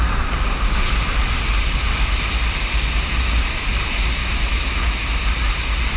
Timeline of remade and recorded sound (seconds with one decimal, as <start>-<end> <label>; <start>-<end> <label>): 0.0-4.2 recorded; 4.2-5.0 remade; 5.0-6.0 recorded